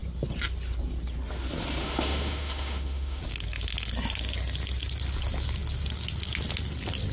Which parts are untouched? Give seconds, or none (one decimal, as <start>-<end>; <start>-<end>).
0.0-1.8; 3.2-7.1